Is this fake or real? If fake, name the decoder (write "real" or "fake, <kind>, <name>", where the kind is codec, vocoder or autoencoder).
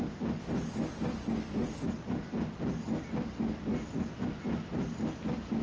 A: real